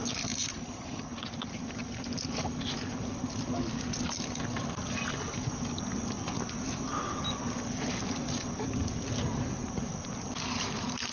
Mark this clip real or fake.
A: real